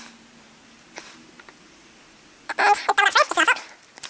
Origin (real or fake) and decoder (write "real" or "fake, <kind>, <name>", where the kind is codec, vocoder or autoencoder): real